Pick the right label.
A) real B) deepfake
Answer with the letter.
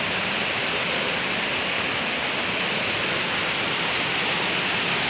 A